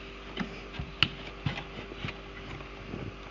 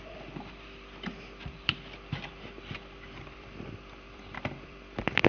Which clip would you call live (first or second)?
first